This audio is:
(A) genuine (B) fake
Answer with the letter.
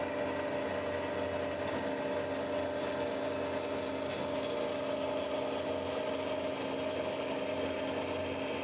A